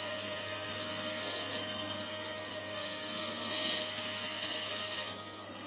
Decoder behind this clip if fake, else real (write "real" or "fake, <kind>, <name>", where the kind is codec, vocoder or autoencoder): fake, codec, SNAC